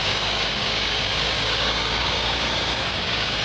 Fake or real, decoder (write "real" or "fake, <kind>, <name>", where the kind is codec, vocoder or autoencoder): fake, codec, DAC